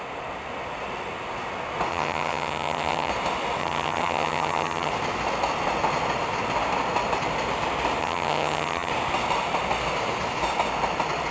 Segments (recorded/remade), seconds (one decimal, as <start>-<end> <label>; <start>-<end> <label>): 0.0-1.9 recorded; 1.9-3.1 remade; 3.1-3.6 recorded; 3.6-4.9 remade; 4.9-8.0 recorded; 8.0-8.9 remade; 8.9-11.3 recorded